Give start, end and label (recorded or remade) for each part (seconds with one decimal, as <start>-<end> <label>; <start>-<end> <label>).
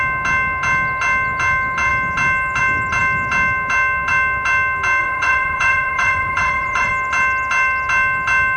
0.0-5.0 recorded; 5.0-6.9 remade; 6.9-8.6 recorded